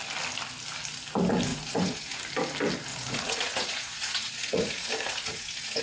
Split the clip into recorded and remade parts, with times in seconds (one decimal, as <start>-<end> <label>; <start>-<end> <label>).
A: 0.0-1.5 recorded; 1.5-2.2 remade; 2.2-2.9 recorded; 2.9-5.8 remade